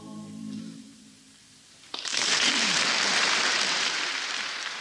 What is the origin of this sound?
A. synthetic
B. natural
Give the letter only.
A